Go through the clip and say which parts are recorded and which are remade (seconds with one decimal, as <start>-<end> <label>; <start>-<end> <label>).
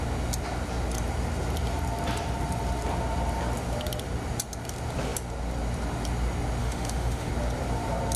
0.0-6.6 recorded; 6.6-7.3 remade; 7.3-8.2 recorded